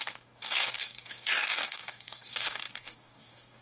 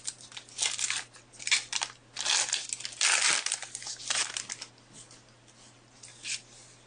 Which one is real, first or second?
second